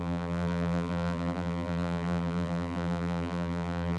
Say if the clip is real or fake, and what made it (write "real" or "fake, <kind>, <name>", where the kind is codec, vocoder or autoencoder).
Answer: fake, vocoder, BigVGAN v2